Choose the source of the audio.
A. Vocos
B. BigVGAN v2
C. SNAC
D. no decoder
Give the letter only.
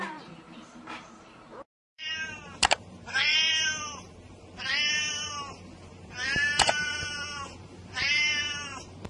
B